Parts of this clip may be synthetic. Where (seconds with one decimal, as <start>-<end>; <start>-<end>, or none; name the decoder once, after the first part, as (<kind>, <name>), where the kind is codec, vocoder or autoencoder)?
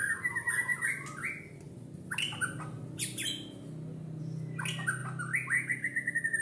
none